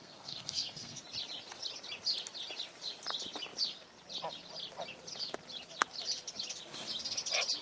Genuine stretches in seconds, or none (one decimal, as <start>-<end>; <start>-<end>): 1.0-7.6